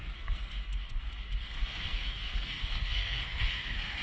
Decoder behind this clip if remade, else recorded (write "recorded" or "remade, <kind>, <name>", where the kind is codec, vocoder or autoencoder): remade, codec, SNAC